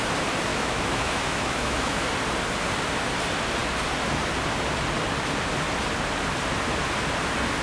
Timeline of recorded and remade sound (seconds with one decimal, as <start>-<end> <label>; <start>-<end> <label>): 0.0-0.5 recorded; 0.5-2.1 remade; 2.1-7.6 recorded